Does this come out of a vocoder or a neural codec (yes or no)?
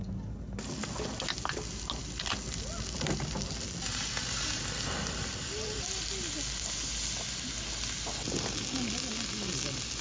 no